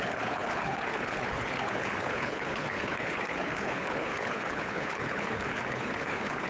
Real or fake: fake